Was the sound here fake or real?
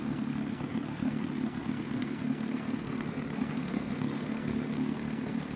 fake